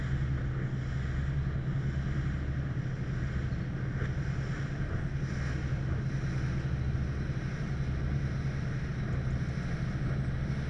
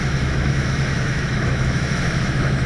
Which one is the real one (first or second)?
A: first